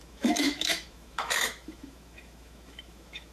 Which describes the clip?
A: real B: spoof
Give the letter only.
B